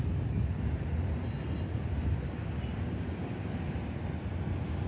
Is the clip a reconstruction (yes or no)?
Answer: no